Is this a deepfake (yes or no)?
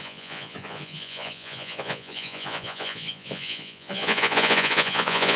yes